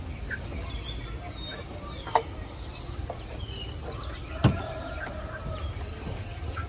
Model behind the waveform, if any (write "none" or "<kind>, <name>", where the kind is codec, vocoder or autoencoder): none